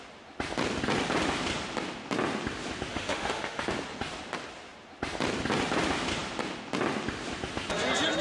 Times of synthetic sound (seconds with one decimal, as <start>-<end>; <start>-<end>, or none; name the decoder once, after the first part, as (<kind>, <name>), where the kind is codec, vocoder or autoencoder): 2.9-3.6 (autoencoder, DAC-VAE)